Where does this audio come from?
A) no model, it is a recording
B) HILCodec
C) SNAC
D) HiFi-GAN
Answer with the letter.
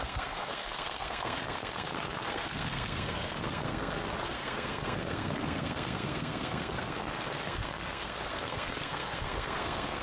C